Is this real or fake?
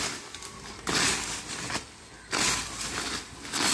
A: real